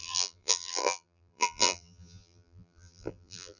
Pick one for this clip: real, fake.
fake